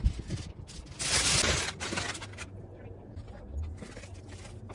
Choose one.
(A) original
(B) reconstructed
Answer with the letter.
A